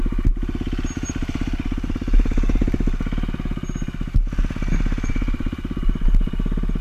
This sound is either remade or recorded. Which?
recorded